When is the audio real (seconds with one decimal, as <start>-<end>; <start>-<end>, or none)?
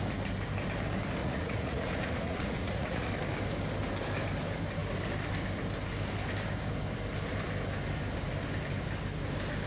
0.0-1.2; 3.1-9.7